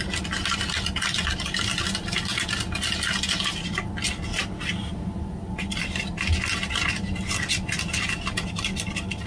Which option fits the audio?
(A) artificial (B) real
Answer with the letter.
B